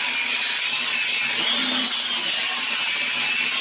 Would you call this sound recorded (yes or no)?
yes